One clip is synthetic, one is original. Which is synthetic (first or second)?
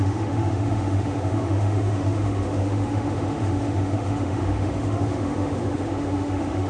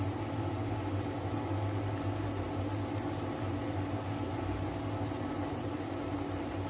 first